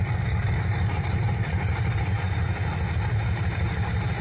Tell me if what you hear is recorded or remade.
recorded